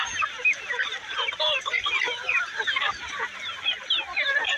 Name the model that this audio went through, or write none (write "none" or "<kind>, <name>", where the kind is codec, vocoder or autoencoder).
none